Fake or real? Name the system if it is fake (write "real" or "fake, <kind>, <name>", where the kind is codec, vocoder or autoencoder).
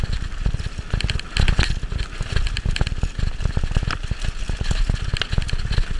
real